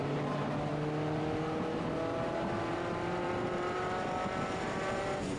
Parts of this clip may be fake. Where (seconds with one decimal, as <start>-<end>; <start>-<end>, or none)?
0.0-0.7; 2.1-5.4